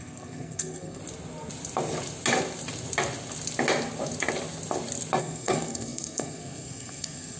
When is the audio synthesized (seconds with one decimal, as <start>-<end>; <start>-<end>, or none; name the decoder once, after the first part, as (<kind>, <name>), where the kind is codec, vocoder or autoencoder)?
0.0-1.0 (codec, SNAC); 5.2-7.4